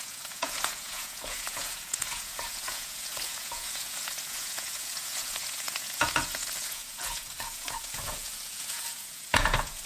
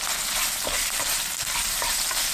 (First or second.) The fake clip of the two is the first